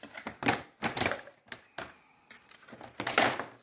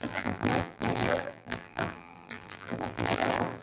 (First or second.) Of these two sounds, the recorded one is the first